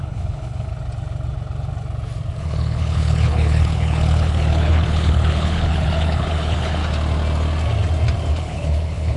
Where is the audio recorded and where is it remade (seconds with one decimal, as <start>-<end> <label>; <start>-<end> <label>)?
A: 0.0-0.7 remade; 0.7-2.4 recorded; 2.4-6.8 remade; 6.8-8.3 recorded; 8.3-9.2 remade